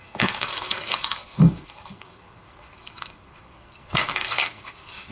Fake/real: fake